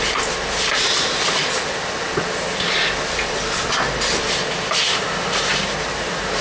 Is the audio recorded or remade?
recorded